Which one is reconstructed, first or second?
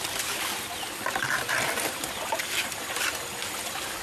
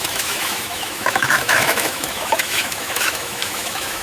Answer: second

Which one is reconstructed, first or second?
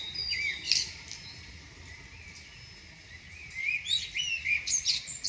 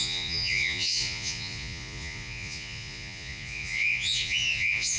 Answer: second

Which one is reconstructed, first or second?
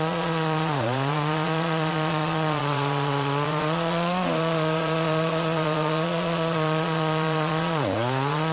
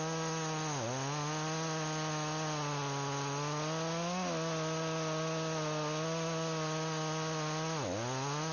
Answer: first